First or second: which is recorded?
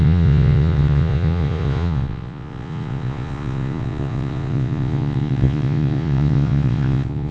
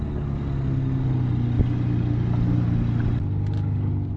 second